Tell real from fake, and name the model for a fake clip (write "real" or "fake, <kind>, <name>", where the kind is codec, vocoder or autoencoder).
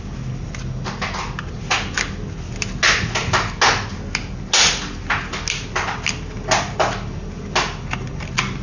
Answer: real